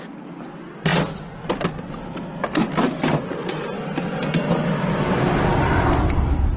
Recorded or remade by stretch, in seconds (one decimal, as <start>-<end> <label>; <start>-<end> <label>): 0.0-6.6 recorded